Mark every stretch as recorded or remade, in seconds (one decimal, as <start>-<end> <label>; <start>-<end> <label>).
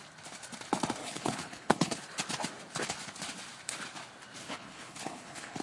0.0-1.0 recorded; 1.0-2.0 remade; 2.0-4.4 recorded; 4.4-5.6 remade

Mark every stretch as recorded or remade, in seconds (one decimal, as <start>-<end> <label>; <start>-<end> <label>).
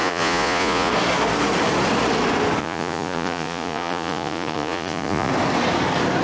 0.0-0.9 remade; 0.9-2.6 recorded; 2.6-5.3 remade; 5.3-6.2 recorded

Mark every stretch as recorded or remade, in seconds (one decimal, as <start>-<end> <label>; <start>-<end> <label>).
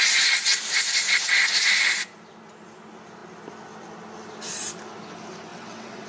0.0-5.5 recorded; 5.5-6.1 remade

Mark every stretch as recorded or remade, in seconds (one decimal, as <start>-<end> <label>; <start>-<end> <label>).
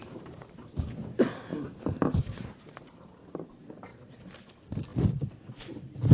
0.0-0.8 remade; 0.8-1.5 recorded; 1.5-3.1 remade; 3.1-3.9 recorded; 3.9-4.5 remade; 4.5-6.1 recorded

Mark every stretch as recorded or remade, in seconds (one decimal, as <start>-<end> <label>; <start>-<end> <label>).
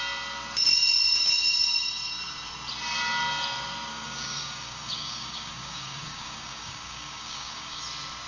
0.0-3.9 recorded; 3.9-7.8 remade; 7.8-8.3 recorded